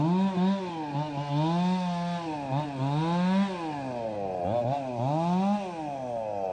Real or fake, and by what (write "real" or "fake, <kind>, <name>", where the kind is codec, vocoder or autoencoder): real